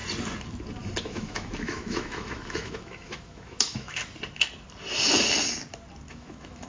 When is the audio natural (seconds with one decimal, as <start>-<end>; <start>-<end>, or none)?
0.0-1.0; 4.0-6.1